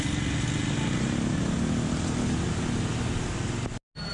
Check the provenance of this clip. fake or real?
real